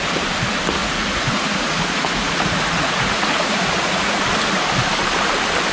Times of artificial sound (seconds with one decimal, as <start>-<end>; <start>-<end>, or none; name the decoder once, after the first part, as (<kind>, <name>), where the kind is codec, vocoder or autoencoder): 0.8-4.2 (vocoder, Vocos)